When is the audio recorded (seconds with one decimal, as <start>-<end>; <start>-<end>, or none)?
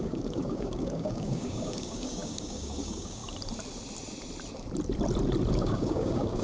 3.2-5.5